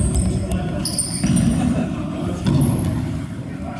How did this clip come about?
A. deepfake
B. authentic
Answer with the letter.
B